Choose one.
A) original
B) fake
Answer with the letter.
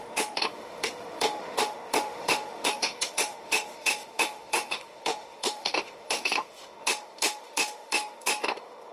B